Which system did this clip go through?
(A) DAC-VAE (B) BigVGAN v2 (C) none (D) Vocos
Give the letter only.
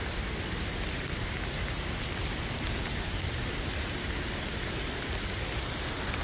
C